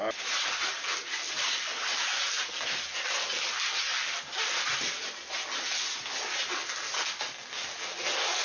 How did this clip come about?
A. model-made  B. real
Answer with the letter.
B